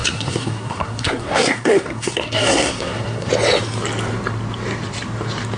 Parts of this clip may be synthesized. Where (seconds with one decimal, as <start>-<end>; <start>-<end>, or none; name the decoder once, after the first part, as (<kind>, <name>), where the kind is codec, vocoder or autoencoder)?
0.0-3.3 (codec, SNAC)